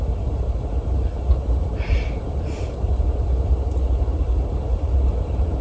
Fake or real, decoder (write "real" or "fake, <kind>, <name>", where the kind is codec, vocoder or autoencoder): real